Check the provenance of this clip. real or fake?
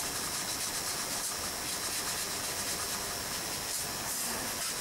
real